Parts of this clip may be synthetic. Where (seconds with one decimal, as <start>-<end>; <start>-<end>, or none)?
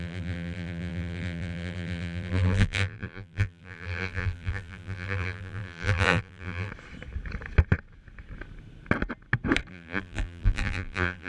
0.0-6.7; 9.7-11.3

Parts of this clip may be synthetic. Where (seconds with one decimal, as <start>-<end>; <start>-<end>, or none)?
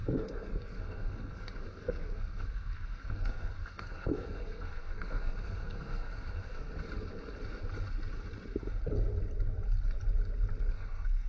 0.0-6.7; 10.6-11.3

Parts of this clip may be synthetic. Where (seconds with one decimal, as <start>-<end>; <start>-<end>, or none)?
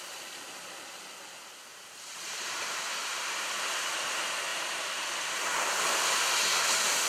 1.7-3.4; 4.5-5.4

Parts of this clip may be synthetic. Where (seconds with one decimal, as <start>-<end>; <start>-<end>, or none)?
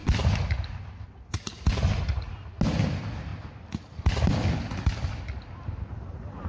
none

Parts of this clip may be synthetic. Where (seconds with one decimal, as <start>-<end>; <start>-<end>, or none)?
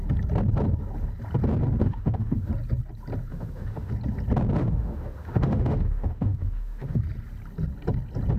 1.8-2.5; 3.3-3.9; 4.6-7.0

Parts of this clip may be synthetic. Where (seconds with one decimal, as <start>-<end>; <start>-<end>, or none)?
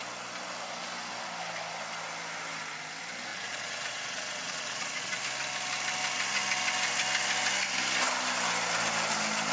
3.3-5.2